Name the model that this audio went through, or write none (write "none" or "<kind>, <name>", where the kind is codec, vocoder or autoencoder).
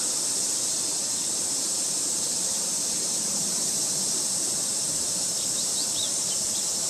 vocoder, BigVGAN v2